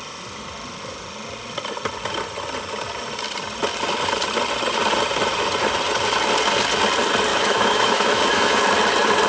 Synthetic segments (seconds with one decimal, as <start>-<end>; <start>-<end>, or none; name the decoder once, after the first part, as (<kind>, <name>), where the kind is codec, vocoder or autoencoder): 7.3-8.6 (autoencoder, DAC-VAE)